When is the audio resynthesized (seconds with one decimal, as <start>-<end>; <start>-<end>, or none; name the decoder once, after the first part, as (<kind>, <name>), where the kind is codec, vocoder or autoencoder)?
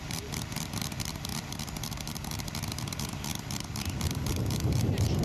0.0-5.2 (vocoder, BigVGAN v2)